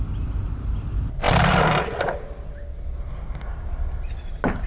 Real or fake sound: real